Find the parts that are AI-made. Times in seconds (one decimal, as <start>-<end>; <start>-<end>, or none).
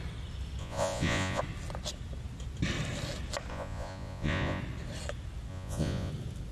0.6-1.4; 3.5-4.6; 5.5-6.1